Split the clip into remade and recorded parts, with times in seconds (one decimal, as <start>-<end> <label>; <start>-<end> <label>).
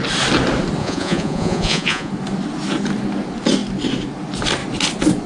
0.0-0.8 recorded; 0.8-2.1 remade; 2.1-5.3 recorded